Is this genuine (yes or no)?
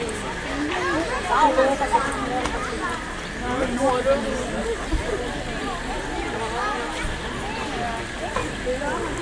yes